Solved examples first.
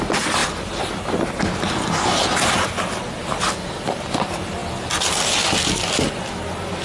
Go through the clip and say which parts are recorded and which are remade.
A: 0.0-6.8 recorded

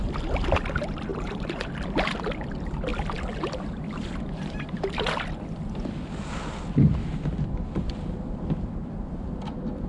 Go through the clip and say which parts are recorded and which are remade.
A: 0.0-1.1 recorded; 1.1-1.7 remade; 1.7-9.9 recorded